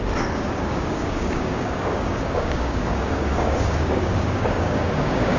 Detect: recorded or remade remade